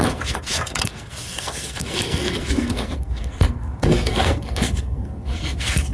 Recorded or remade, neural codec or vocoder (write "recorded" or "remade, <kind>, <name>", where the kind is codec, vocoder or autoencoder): remade, codec, SNAC